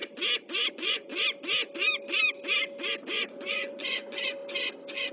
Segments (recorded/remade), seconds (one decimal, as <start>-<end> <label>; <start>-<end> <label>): 0.0-0.7 recorded; 0.7-1.1 remade; 1.1-3.1 recorded; 3.1-4.4 remade; 4.4-5.1 recorded